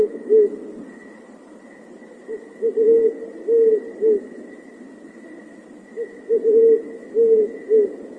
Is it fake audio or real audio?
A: real